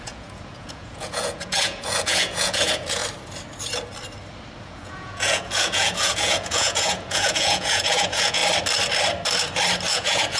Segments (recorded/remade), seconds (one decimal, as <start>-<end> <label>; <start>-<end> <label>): 0.0-3.0 remade; 3.0-4.6 recorded; 4.6-8.4 remade; 8.4-9.9 recorded; 9.9-10.4 remade